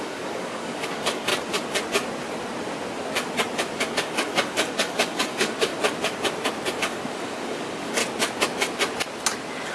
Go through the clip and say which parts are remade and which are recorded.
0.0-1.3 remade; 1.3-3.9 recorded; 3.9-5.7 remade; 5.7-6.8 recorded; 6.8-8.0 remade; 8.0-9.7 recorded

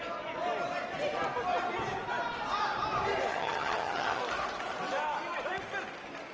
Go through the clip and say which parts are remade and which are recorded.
0.0-3.3 recorded; 3.3-4.2 remade; 4.2-6.3 recorded

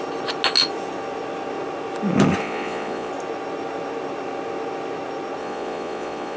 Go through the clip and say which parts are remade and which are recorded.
0.0-2.4 recorded; 2.4-3.1 remade; 3.1-5.4 recorded; 5.4-6.4 remade

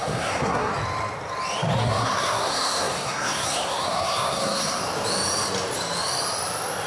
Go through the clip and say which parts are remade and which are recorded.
0.0-0.7 remade; 0.7-1.8 recorded; 1.8-4.8 remade; 4.8-6.9 recorded

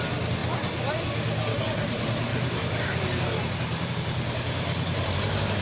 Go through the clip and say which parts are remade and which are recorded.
0.0-2.3 recorded; 2.3-3.9 remade; 3.9-5.6 recorded

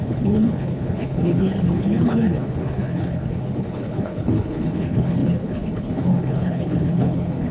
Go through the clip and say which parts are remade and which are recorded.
0.0-7.5 remade

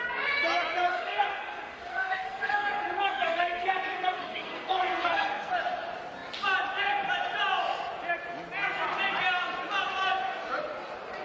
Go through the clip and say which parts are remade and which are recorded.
0.0-0.9 recorded; 0.9-5.5 remade; 5.5-11.2 recorded